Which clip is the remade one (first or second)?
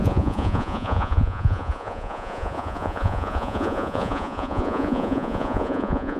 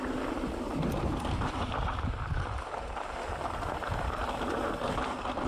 first